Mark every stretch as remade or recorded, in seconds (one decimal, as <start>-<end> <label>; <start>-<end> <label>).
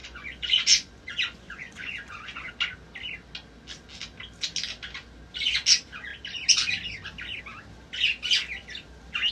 0.0-2.5 remade; 2.5-9.3 recorded